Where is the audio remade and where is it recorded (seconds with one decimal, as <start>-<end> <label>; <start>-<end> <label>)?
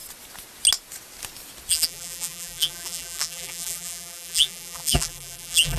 0.0-1.7 recorded; 1.7-5.8 remade